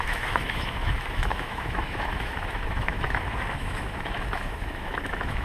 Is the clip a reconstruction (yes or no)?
yes